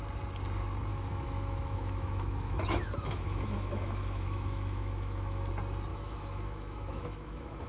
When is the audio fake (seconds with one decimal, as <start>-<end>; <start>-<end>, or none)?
0.9-5.5; 5.9-7.7